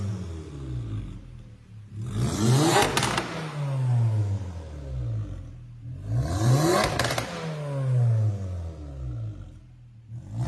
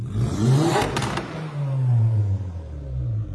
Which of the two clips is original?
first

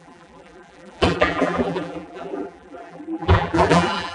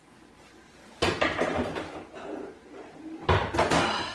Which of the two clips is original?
second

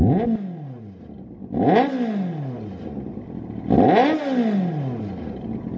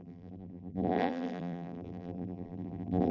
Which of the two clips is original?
first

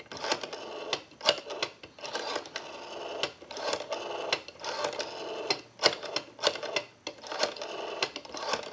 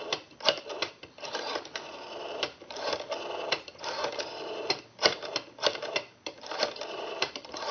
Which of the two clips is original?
first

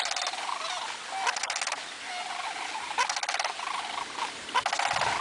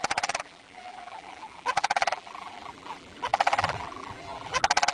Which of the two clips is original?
first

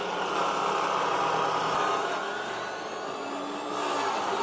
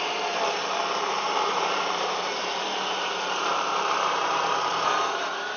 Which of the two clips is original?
first